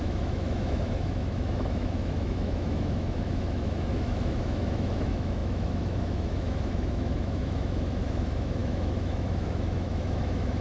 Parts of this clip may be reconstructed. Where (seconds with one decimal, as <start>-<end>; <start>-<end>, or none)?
0.0-10.6